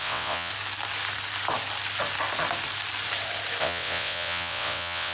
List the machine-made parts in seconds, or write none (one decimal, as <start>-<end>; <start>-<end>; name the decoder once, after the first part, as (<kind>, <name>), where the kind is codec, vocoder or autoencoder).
0.0-0.5 (vocoder, WaveNeXt); 3.6-5.1

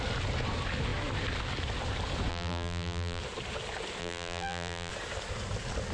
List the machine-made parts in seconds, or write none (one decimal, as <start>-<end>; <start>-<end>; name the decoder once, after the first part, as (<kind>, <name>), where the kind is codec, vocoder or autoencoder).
2.3-3.2 (vocoder, BigVGAN v2); 4.0-4.9

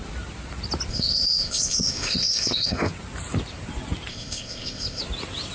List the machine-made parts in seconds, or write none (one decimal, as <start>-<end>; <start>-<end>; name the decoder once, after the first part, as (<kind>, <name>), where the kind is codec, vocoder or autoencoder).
0.9-2.9 (codec, ZipCodec); 4.1-5.0

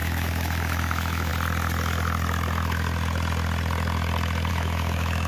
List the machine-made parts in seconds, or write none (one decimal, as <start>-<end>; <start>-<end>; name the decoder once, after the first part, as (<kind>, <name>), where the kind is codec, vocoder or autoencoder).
0.0-1.3 (autoencoder, DAC-VAE); 4.5-5.3